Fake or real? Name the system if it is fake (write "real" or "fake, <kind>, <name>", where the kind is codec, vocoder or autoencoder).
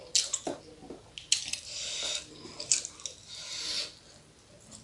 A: real